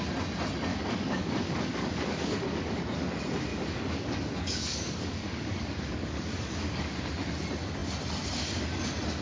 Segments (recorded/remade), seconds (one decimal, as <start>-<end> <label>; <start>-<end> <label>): 0.0-0.7 recorded; 0.7-2.8 remade; 2.8-3.5 recorded; 3.5-6.9 remade; 6.9-9.2 recorded